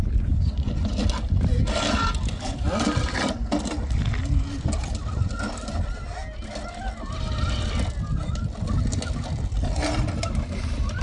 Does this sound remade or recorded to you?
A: recorded